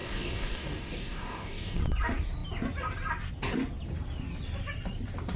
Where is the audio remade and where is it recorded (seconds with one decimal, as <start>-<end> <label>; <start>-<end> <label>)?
0.0-1.8 remade; 1.8-5.4 recorded

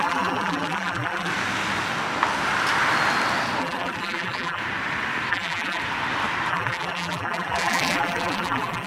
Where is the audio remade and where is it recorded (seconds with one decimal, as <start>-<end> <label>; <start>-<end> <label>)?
0.0-1.3 remade; 1.3-3.6 recorded; 3.6-4.6 remade; 4.6-5.3 recorded; 5.3-5.8 remade; 5.8-6.5 recorded; 6.5-8.9 remade

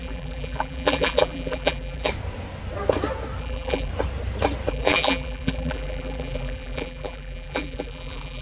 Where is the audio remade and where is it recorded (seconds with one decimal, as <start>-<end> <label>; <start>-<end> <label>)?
0.0-2.1 remade; 2.1-3.4 recorded; 3.4-3.9 remade; 3.9-4.7 recorded; 4.7-8.4 remade